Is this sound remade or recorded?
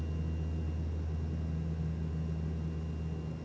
recorded